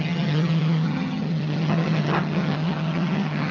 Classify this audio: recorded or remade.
remade